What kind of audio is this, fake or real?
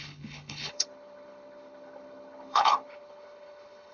fake